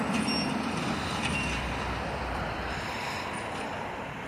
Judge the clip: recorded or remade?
remade